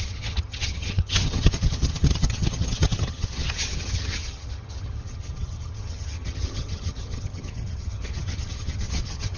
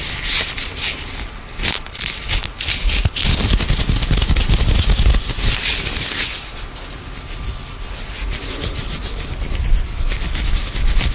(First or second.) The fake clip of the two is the first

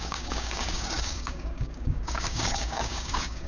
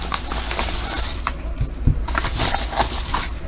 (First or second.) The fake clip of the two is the first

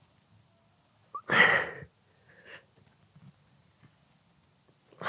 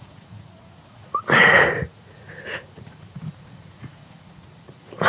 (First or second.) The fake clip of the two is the second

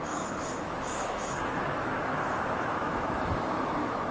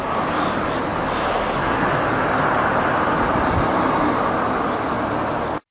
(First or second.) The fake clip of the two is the first